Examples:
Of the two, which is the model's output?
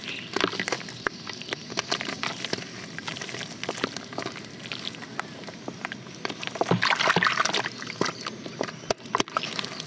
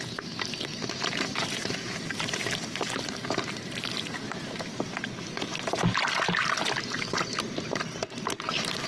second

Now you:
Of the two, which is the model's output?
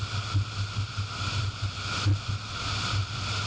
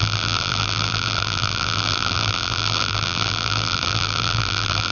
second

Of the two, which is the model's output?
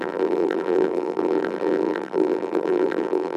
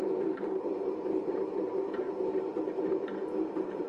first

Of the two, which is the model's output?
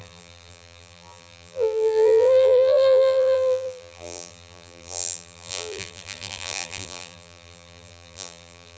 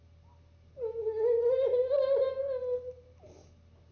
first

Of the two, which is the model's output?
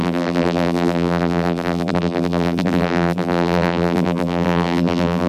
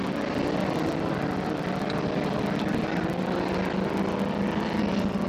first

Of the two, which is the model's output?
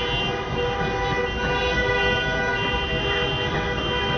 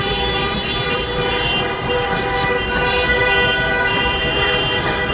second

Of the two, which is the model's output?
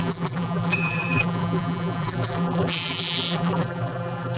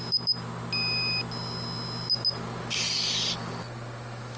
first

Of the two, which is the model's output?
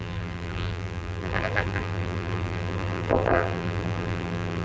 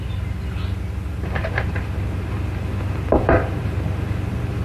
first